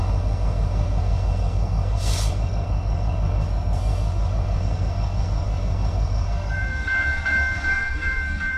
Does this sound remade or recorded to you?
remade